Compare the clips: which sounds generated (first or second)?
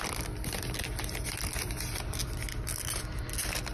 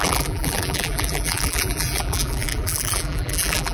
second